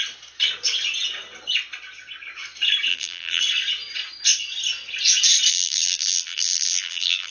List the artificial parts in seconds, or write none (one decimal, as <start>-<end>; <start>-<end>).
2.9-3.4; 5.5-7.3